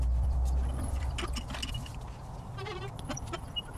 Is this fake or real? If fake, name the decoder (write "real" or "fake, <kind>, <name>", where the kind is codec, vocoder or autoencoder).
real